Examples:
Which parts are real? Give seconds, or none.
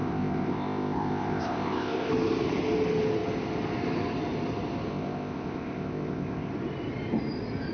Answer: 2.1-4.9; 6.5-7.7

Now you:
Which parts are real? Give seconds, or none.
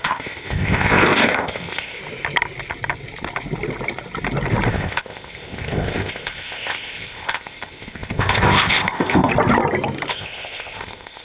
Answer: 2.0-4.7; 9.3-10.1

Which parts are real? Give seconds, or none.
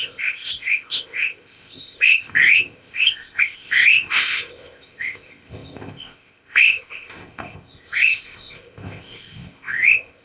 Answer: none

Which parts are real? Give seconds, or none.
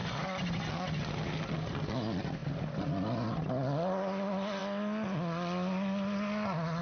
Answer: 0.0-6.8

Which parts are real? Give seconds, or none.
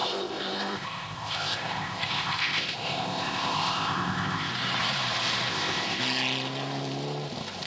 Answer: 4.5-5.5; 6.0-7.7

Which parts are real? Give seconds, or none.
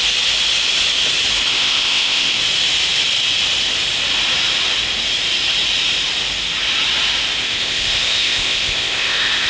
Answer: 0.0-1.5; 2.4-7.4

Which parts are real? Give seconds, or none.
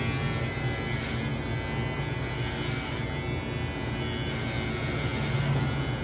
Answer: 0.0-6.0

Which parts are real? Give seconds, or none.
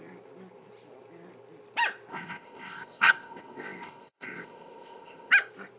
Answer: 0.0-2.1; 5.3-5.8